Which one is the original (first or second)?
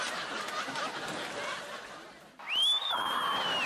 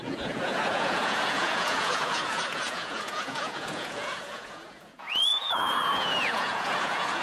first